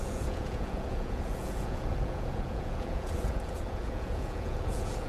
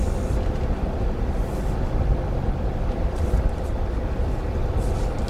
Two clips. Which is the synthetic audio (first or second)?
first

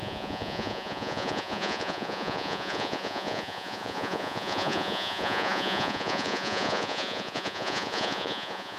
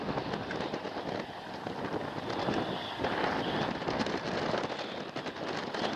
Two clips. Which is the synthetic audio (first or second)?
first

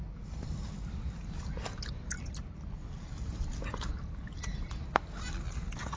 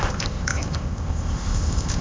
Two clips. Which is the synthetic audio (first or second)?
second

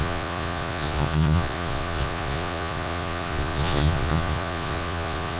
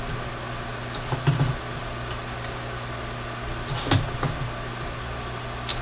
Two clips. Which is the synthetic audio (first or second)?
first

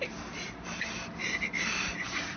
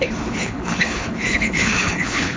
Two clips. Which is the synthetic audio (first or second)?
second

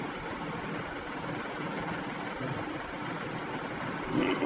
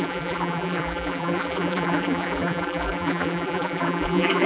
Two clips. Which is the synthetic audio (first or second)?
second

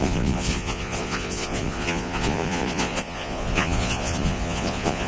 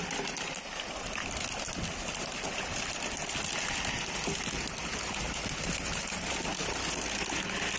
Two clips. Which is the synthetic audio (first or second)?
first